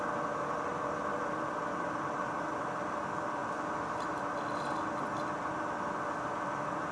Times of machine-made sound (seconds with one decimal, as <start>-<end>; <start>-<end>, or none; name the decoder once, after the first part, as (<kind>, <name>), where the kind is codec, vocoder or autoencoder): 0.7-4.3 (vocoder, BigVGAN v2)